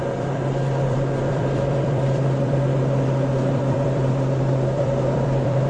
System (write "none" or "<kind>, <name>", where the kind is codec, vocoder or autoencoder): vocoder, BigVGAN v2